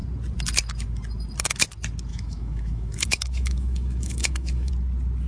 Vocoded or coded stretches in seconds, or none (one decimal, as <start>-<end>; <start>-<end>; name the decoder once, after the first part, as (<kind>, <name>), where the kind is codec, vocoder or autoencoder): 2.1-4.7 (autoencoder, DAC-VAE)

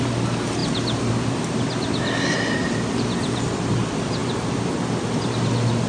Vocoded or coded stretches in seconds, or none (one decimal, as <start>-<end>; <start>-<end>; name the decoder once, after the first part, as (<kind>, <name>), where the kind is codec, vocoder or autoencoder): none

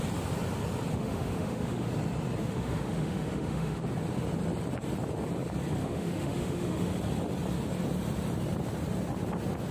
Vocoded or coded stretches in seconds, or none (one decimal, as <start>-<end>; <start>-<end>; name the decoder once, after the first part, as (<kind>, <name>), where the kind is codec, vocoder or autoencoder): 0.9-1.9 (autoencoder, DAC-VAE); 2.4-3.8; 5.8-6.9